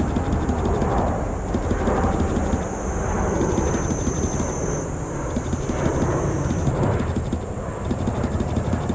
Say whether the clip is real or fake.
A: real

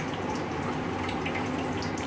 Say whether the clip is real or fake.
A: real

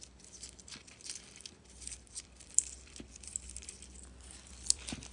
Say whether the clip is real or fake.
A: fake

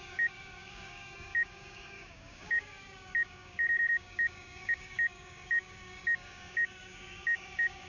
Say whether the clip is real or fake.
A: fake